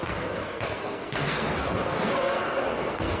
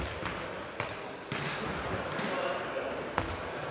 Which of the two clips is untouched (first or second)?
second